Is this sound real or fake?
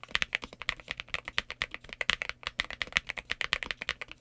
real